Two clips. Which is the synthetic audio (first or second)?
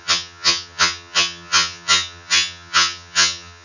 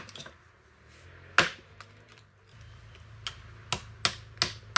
first